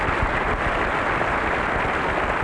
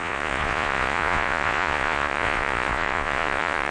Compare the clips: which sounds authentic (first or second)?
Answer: first